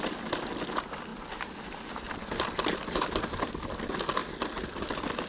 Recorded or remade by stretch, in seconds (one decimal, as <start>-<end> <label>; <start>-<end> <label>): 0.0-5.3 recorded